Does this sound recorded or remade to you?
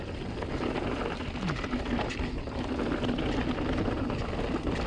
recorded